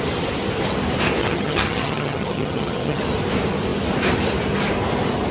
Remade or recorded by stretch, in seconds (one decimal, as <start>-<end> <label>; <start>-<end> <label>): 0.0-1.2 recorded; 1.2-3.0 remade; 3.0-5.3 recorded